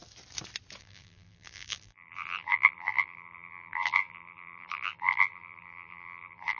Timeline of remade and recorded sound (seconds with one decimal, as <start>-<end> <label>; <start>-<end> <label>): 0.0-0.8 recorded; 0.8-6.6 remade